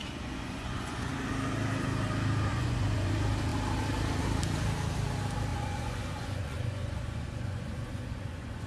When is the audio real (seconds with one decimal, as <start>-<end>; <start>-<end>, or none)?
1.1-2.5; 3.1-5.5